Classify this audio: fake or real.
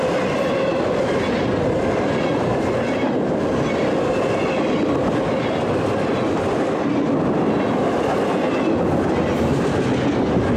real